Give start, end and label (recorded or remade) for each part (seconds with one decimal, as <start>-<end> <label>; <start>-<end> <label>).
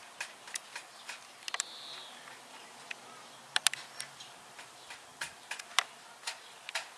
0.0-7.0 recorded